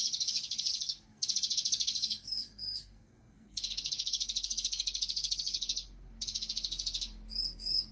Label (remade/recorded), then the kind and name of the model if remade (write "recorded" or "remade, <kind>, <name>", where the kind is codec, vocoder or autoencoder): remade, codec, SNAC